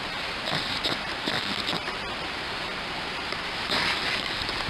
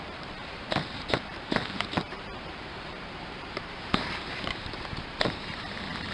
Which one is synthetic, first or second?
second